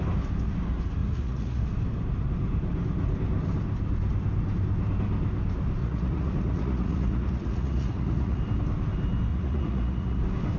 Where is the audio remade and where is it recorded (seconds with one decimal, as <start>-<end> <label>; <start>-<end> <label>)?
0.0-1.0 recorded; 1.0-1.6 remade; 1.6-5.8 recorded; 5.8-8.4 remade; 8.4-9.3 recorded; 9.3-10.2 remade; 10.2-10.6 recorded